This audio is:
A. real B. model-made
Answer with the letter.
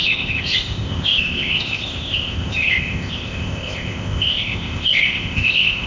B